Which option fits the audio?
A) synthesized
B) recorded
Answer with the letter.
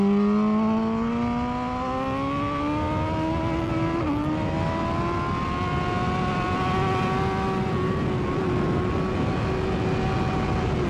B